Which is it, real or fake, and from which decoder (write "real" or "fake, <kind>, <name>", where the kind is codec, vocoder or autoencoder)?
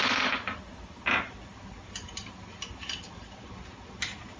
real